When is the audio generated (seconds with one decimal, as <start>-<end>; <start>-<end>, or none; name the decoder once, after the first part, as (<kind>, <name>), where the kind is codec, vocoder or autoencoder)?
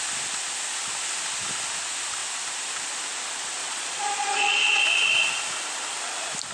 3.6-4.8 (vocoder, Vocos)